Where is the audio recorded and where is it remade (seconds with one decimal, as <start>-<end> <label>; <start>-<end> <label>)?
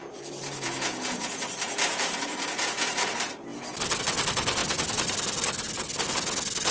0.0-1.4 remade; 1.4-1.9 recorded; 1.9-3.1 remade; 3.1-6.7 recorded